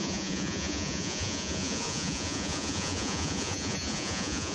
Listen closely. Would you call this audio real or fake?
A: fake